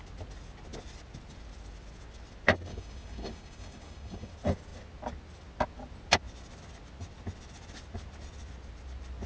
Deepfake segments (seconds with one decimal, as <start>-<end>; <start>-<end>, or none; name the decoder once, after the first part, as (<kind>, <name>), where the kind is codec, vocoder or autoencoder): 2.7-4.3 (codec, DAC)